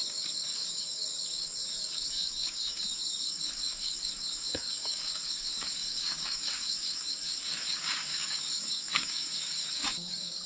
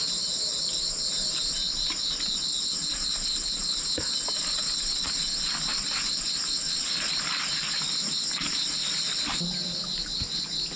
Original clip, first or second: second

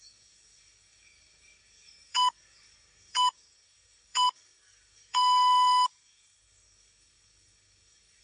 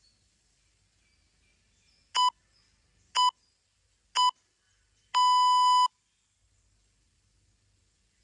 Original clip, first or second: second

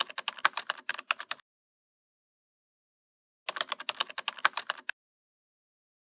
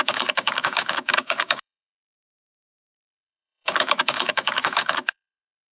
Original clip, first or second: first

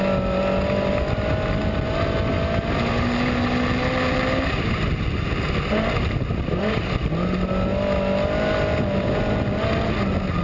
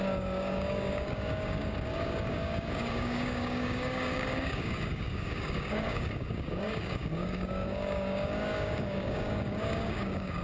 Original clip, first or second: first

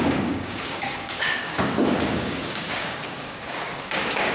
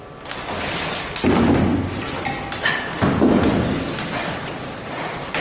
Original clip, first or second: second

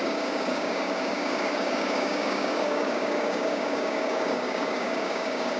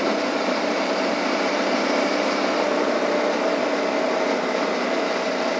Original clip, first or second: second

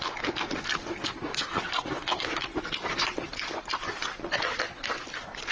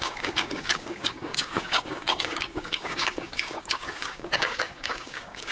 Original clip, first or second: first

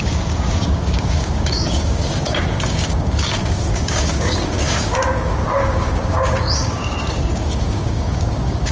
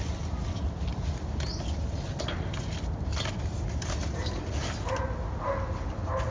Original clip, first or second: second